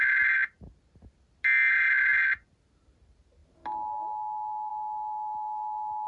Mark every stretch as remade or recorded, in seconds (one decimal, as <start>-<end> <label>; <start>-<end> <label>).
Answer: 0.0-6.1 recorded